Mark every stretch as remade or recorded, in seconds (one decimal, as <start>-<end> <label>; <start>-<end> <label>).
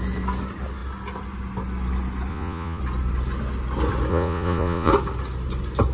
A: 0.0-2.3 recorded; 2.3-2.8 remade; 2.8-4.1 recorded; 4.1-4.9 remade; 4.9-5.9 recorded